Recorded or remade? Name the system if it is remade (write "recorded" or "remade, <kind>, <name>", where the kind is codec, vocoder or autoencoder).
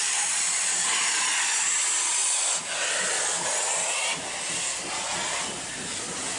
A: recorded